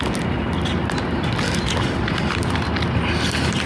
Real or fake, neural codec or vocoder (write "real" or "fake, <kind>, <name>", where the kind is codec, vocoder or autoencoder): real